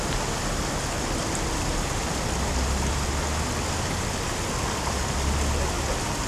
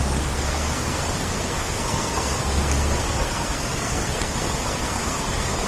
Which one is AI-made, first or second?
second